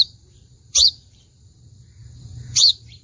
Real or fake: fake